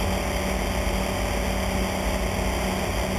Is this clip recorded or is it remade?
recorded